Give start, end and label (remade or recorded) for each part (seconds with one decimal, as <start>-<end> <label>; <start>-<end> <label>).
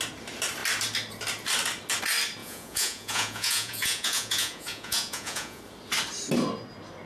0.0-2.4 recorded; 2.4-5.6 remade; 5.6-7.1 recorded